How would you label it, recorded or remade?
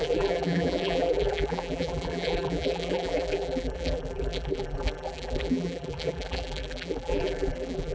remade